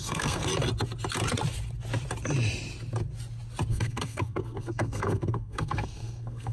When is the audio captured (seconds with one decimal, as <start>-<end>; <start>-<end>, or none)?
0.5-3.7